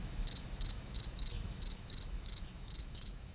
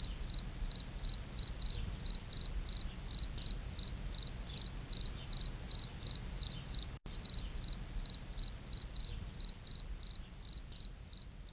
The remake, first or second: first